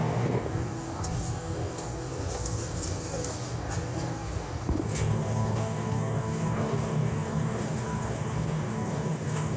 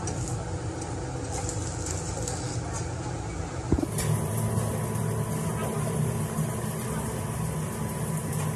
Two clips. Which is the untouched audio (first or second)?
second